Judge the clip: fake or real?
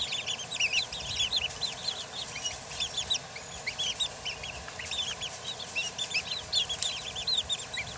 real